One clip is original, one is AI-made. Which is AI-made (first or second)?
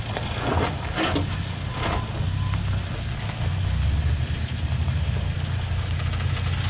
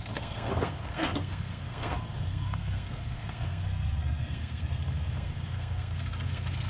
second